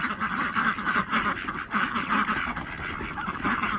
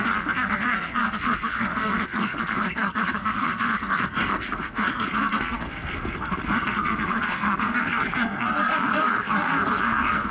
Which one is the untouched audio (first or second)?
first